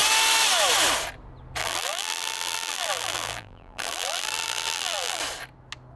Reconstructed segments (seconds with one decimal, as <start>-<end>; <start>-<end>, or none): 1.6-5.2